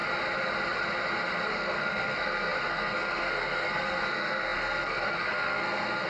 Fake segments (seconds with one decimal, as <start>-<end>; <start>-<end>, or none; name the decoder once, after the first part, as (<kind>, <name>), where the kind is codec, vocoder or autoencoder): 1.5-6.1 (codec, SNAC)